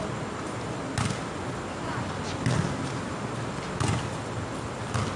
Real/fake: real